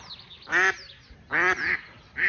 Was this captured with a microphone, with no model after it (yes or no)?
yes